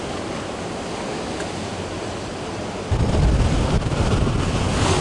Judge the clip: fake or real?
real